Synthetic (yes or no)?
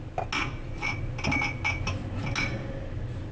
no